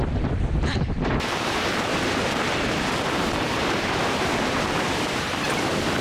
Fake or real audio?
fake